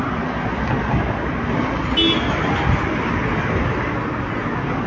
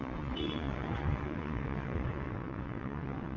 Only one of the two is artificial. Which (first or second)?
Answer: second